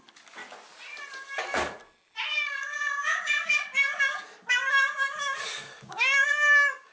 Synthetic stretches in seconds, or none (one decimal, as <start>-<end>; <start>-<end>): 0.0-0.4; 1.1-1.8; 2.4-6.9